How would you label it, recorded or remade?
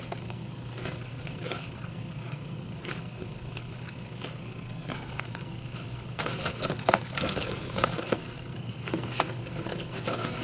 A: remade